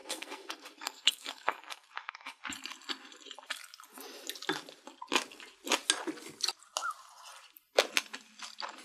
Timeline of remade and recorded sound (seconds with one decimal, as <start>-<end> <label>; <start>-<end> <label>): 0.0-2.4 remade; 2.4-8.8 recorded